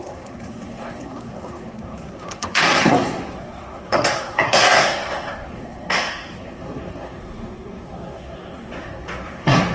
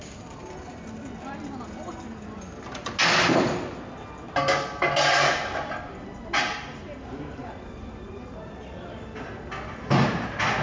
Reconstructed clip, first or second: first